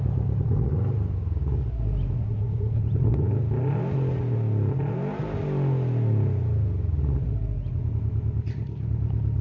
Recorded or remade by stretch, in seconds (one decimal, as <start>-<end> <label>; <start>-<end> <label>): 0.0-2.2 recorded; 2.2-2.8 remade; 2.8-9.4 recorded